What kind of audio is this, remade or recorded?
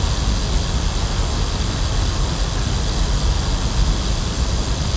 recorded